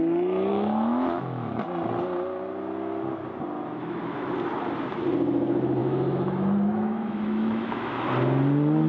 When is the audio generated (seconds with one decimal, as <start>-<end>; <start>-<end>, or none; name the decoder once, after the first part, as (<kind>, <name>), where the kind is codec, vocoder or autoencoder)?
0.5-1.6 (autoencoder, DAC-VAE); 3.8-4.3; 5.8-8.1